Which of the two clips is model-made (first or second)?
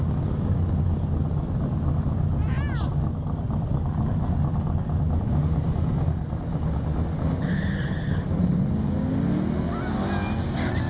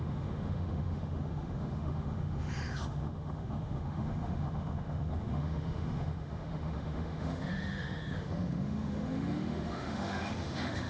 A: second